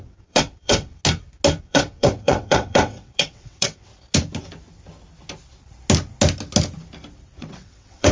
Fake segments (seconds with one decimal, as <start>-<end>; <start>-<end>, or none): 0.0-1.0; 1.6-3.9; 7.4-8.1